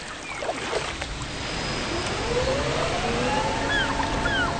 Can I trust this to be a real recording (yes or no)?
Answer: yes